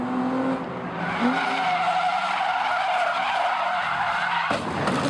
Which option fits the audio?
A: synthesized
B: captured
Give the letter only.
B